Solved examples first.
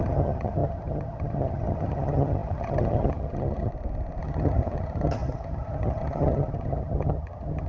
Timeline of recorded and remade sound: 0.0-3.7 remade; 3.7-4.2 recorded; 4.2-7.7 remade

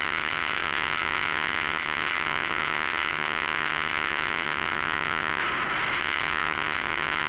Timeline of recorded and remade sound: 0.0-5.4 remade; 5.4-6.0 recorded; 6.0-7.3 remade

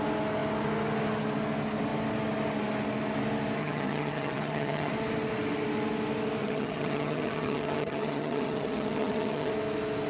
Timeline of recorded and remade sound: 0.0-3.6 recorded; 3.6-4.9 remade; 4.9-6.4 recorded; 6.4-9.5 remade; 9.5-10.1 recorded

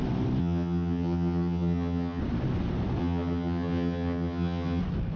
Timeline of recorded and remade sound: 0.0-0.4 recorded; 0.4-2.2 remade; 2.2-3.0 recorded; 3.0-4.8 remade; 4.8-5.2 recorded

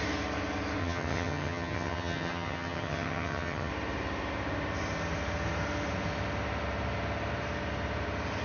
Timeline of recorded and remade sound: 0.0-0.8 recorded; 0.8-3.7 remade; 3.7-8.4 recorded

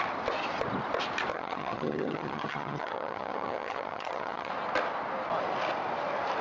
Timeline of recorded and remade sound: 0.0-1.3 recorded; 1.3-4.5 remade; 4.5-6.4 recorded

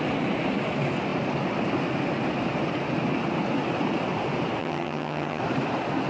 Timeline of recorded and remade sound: 0.0-4.6 recorded; 4.6-5.4 remade; 5.4-6.1 recorded